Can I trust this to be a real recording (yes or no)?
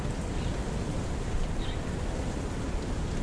yes